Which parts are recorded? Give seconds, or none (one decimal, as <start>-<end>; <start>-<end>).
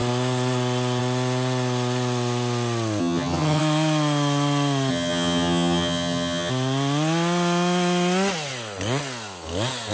0.0-3.0; 3.6-4.9; 6.5-9.9